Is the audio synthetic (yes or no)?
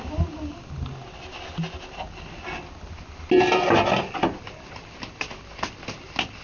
no